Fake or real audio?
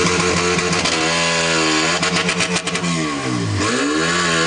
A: real